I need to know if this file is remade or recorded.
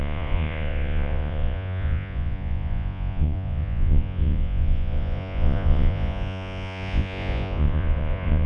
remade